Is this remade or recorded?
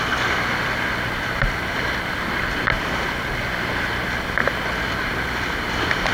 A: recorded